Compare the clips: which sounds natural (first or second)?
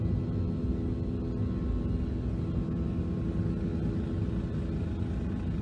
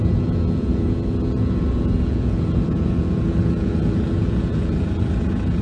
first